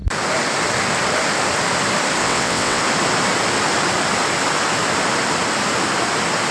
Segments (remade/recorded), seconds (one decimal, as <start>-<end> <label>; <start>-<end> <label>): 0.0-2.2 recorded; 2.2-2.8 remade; 2.8-6.5 recorded